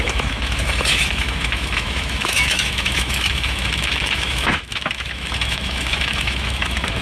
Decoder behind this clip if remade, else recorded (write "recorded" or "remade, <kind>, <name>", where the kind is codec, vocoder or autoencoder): remade, autoencoder, DAC-VAE